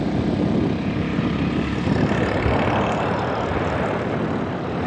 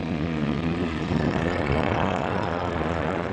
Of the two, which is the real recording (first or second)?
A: first